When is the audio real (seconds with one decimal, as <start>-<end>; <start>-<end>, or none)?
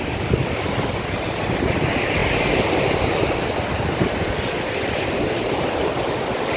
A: 0.0-6.6